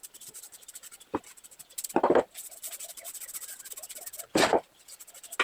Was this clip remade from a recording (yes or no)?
no